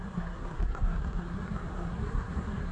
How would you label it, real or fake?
fake